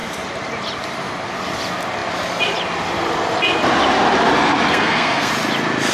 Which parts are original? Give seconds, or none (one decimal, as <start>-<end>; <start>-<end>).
0.0-4.7; 5.3-5.9

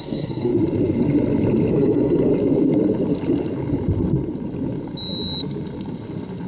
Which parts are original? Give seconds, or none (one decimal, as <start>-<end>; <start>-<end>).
0.5-1.7; 2.3-6.5

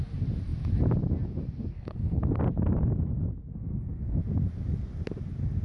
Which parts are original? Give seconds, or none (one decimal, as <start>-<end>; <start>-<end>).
0.0-1.7; 2.2-3.5; 4.2-5.6

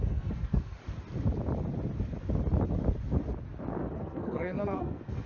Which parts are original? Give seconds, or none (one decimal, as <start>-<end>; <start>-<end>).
0.7-3.9

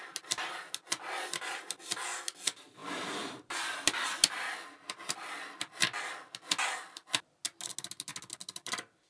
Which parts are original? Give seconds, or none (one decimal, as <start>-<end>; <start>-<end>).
0.0-9.1

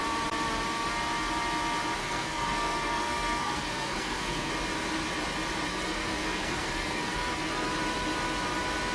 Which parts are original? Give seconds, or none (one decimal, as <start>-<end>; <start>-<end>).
0.0-2.0; 4.5-5.7; 7.7-8.9